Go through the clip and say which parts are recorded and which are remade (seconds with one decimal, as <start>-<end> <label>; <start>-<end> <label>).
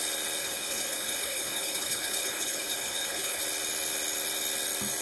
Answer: 0.0-0.4 recorded; 0.4-3.4 remade; 3.4-5.0 recorded